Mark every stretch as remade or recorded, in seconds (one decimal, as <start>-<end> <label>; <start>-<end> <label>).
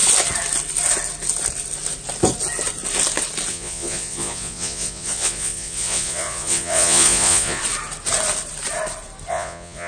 0.0-3.5 recorded; 3.5-7.6 remade; 7.6-9.3 recorded; 9.3-9.9 remade